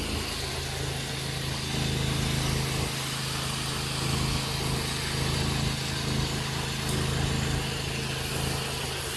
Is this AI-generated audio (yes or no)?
no